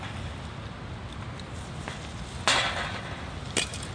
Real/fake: real